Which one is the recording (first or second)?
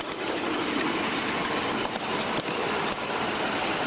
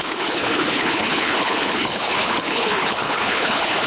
first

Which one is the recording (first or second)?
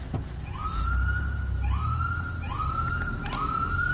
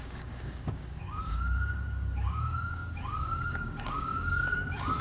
first